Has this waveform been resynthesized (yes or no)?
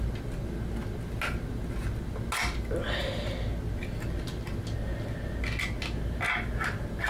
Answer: no